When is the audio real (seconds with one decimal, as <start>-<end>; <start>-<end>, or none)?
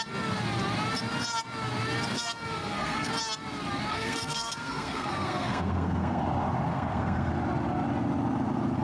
0.0-2.1; 3.1-3.9; 6.2-6.7; 7.3-8.8